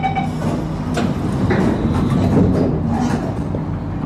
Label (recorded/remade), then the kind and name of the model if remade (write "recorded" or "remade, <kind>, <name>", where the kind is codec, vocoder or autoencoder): recorded